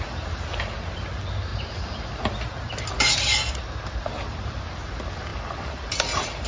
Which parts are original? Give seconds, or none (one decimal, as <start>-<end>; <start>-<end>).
0.0-6.5